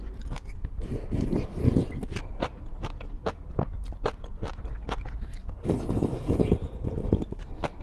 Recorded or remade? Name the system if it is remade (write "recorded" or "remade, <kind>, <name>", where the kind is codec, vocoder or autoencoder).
recorded